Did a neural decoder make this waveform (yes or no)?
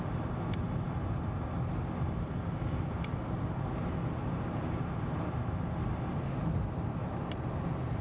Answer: no